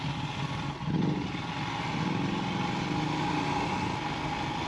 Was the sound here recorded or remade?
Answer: recorded